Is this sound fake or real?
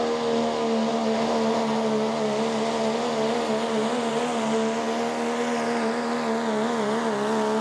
real